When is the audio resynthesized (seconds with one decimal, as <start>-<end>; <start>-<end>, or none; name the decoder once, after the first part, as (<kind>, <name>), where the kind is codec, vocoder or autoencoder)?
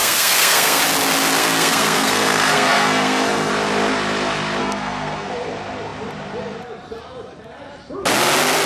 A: 0.0-0.8 (codec, SNAC); 1.4-3.5; 4.6-5.3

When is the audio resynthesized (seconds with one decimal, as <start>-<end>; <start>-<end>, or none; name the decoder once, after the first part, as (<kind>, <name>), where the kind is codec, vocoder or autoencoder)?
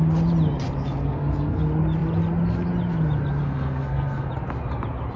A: 1.0-1.6 (codec, SNAC); 3.4-4.3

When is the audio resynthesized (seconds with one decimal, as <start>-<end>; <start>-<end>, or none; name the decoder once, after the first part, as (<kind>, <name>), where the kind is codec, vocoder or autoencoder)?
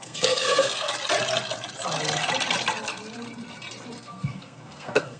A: 0.0-0.9 (codec, SNAC); 4.0-5.2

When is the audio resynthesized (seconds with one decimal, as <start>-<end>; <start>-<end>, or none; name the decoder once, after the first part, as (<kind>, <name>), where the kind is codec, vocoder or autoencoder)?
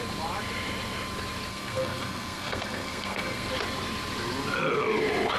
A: 1.5-3.5 (codec, SNAC)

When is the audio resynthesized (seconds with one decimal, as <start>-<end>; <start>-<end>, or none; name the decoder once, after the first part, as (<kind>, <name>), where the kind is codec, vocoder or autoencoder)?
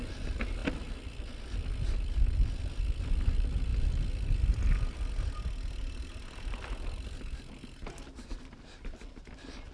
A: none